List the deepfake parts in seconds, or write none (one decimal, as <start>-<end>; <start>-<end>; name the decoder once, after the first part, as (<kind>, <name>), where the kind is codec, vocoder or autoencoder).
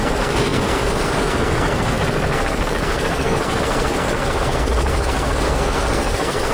0.0-6.5 (codec, SNAC)